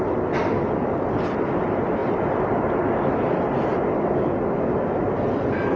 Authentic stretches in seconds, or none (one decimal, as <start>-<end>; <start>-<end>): 0.0-5.8